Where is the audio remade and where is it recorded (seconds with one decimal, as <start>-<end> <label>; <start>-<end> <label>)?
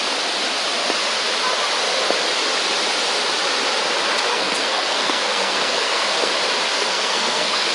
0.0-4.3 recorded; 4.3-6.3 remade; 6.3-6.7 recorded; 6.7-7.7 remade